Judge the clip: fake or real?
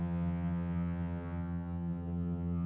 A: fake